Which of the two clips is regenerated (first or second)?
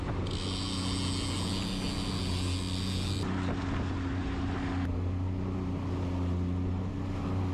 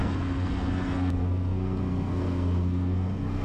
second